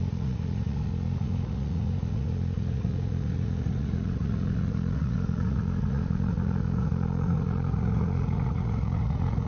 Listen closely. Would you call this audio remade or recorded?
remade